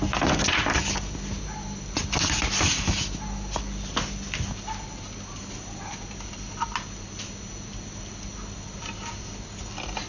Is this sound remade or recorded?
recorded